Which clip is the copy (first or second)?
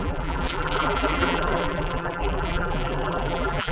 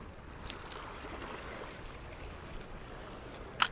first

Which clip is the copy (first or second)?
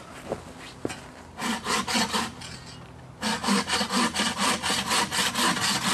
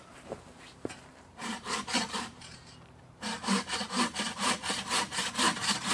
second